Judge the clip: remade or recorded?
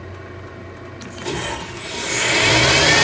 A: recorded